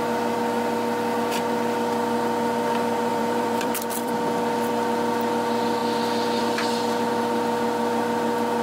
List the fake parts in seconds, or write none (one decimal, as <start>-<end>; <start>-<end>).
3.1-4.1